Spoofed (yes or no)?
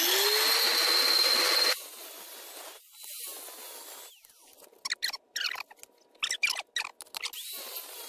no